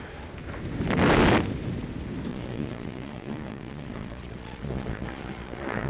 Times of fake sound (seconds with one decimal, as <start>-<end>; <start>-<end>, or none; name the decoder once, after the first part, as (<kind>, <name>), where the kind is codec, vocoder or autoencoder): 2.3-5.9 (vocoder, Vocos)